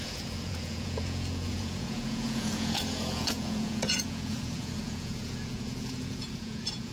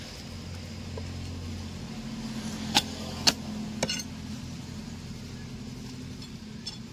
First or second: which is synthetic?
first